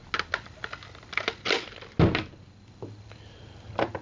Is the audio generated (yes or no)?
no